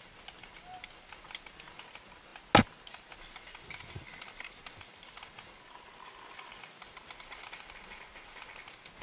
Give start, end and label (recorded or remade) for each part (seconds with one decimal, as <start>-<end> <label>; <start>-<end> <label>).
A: 0.0-9.0 recorded